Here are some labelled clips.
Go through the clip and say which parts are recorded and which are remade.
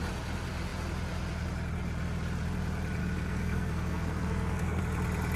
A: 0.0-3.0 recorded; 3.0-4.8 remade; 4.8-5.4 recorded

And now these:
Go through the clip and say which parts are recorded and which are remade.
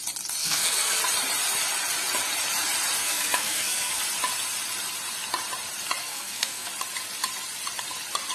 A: 0.0-0.4 recorded; 0.4-1.0 remade; 1.0-3.0 recorded; 3.0-4.0 remade; 4.0-6.0 recorded; 6.0-6.7 remade; 6.7-8.3 recorded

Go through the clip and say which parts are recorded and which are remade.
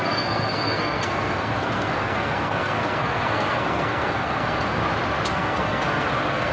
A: 0.0-4.8 remade; 4.8-5.3 recorded; 5.3-6.5 remade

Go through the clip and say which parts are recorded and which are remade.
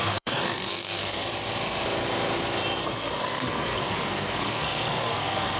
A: 0.0-1.3 remade; 1.3-2.8 recorded; 2.8-5.6 remade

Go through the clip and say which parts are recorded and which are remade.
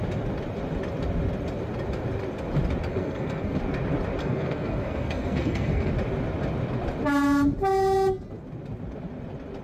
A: 0.0-2.9 recorded; 2.9-3.6 remade; 3.6-4.2 recorded; 4.2-5.9 remade; 5.9-9.6 recorded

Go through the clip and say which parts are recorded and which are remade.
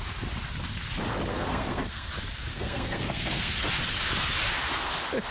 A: 0.0-1.3 recorded; 1.3-2.1 remade; 2.1-2.5 recorded; 2.5-3.5 remade; 3.5-5.3 recorded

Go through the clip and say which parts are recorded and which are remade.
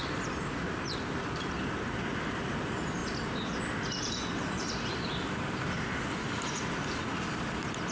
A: 0.0-7.9 recorded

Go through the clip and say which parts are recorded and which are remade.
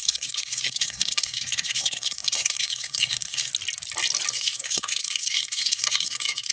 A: 0.0-3.5 remade; 3.5-4.3 recorded; 4.3-6.5 remade